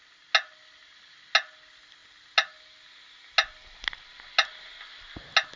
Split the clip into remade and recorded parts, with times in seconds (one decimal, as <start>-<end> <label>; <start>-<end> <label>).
0.0-5.6 recorded